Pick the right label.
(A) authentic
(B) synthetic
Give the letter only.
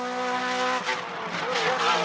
A